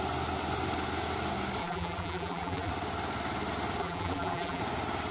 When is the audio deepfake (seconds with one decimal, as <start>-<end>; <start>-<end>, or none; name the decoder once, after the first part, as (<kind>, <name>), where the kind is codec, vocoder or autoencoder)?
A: 1.6-2.7 (vocoder, BigVGAN v2); 3.8-4.6